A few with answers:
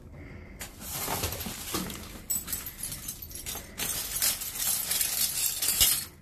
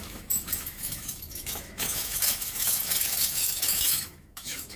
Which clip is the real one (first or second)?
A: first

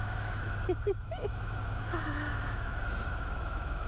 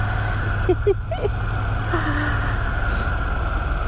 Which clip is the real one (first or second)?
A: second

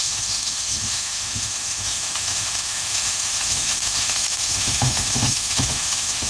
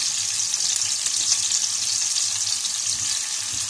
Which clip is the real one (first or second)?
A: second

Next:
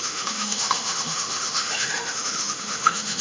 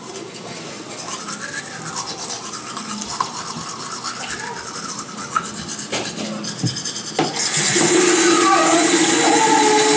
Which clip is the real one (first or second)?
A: second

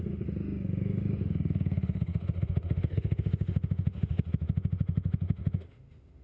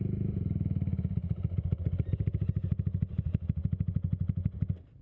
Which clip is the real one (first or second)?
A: second